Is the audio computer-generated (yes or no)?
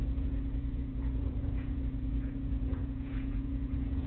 yes